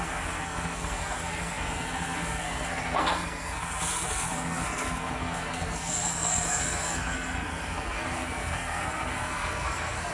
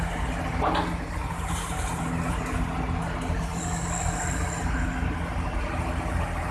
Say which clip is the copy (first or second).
first